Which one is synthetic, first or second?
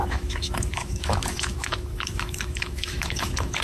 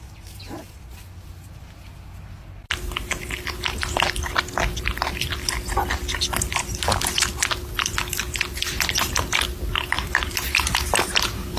first